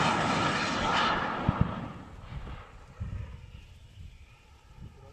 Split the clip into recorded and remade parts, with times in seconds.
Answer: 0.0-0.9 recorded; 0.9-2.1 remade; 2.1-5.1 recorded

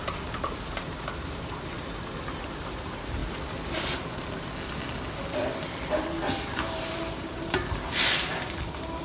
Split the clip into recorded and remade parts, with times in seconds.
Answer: 0.0-3.2 remade; 3.2-6.3 recorded; 6.3-9.0 remade

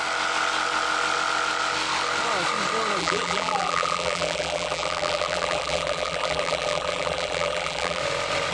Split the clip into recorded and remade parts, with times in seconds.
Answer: 0.0-3.0 recorded; 3.0-8.0 remade; 8.0-8.5 recorded